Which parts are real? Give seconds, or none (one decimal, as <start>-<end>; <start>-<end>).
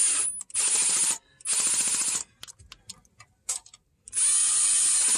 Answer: 0.0-5.2